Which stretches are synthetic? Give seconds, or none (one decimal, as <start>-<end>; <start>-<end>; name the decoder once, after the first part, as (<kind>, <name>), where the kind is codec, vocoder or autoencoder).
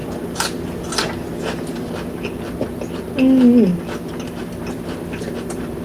none